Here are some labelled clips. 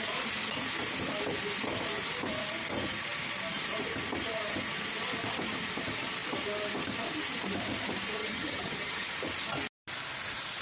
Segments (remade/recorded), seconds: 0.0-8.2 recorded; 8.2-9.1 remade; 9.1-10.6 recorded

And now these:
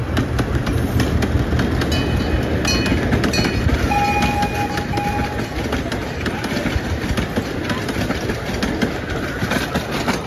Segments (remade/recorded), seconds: 0.0-10.3 recorded

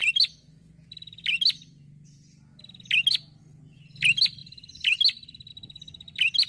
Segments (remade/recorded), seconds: 0.0-2.5 remade; 2.5-3.4 recorded; 3.4-6.5 remade

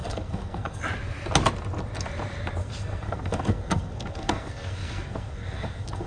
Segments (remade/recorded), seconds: 0.0-0.8 remade; 0.8-2.6 recorded; 2.6-6.1 remade

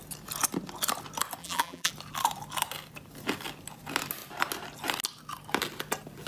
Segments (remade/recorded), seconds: 0.0-1.4 recorded; 1.4-1.9 remade; 1.9-6.3 recorded

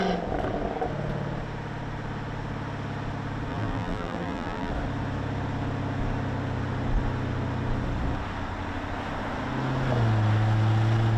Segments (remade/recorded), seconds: 0.0-3.5 recorded; 3.5-4.7 remade; 4.7-11.2 recorded